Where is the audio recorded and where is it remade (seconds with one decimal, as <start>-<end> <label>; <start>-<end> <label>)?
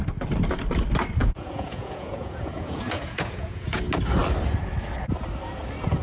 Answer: 0.0-1.2 recorded; 1.2-3.8 remade; 3.8-6.0 recorded